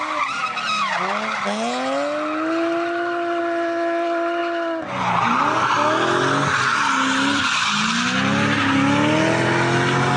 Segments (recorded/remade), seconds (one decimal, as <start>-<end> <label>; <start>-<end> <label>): 0.0-10.2 recorded